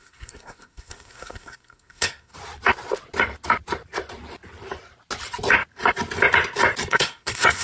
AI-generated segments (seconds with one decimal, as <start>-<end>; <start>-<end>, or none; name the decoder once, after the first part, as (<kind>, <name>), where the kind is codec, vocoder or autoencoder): 0.0-2.3 (codec, SNAC); 6.9-7.6